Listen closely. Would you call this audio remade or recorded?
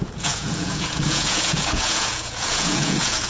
remade